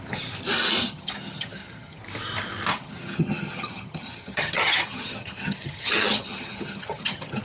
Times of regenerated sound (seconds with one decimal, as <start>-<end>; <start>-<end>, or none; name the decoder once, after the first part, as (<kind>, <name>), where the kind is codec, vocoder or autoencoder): 0.8-2.0 (vocoder, HiFi-GAN); 2.7-7.4